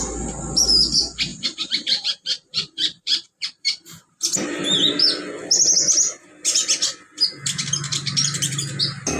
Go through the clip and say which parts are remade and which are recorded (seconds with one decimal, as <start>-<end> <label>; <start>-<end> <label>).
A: 0.0-1.3 recorded; 1.3-5.0 remade; 5.0-7.9 recorded; 7.9-8.5 remade; 8.5-9.2 recorded